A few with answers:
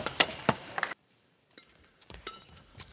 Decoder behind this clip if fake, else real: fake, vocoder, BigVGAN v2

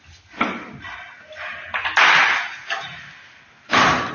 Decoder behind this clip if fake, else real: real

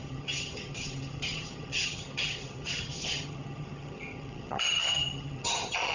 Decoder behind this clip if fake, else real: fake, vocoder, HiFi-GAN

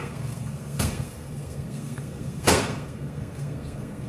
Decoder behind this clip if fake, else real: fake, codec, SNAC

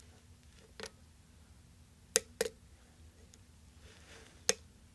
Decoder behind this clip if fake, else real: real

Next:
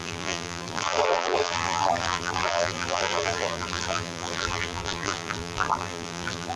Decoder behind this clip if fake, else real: fake, vocoder, BigVGAN v2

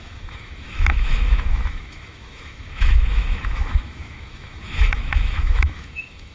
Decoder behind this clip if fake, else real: fake, autoencoder, DAC-VAE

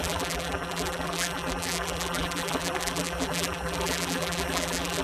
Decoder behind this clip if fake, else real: fake, vocoder, BigVGAN v2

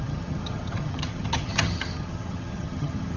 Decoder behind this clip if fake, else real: fake, vocoder, HiFi-GAN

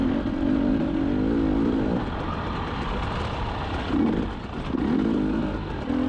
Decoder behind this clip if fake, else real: real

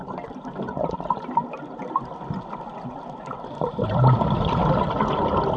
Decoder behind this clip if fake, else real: real